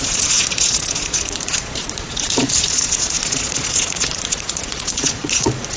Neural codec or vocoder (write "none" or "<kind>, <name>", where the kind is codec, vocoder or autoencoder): vocoder, Vocos